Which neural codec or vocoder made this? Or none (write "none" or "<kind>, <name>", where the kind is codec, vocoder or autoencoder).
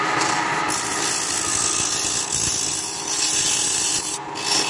none